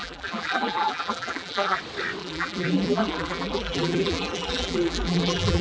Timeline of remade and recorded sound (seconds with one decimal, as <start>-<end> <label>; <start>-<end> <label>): 0.0-1.8 remade; 1.8-2.2 recorded; 2.2-5.6 remade